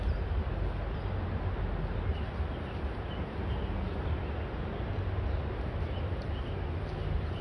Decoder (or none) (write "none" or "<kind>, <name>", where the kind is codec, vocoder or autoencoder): none